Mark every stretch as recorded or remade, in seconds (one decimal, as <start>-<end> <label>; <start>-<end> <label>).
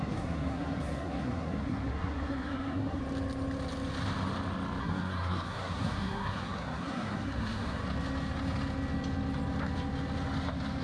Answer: 0.0-3.0 remade; 3.0-4.8 recorded; 4.8-7.8 remade; 7.8-10.8 recorded